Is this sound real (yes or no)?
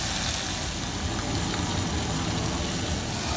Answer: yes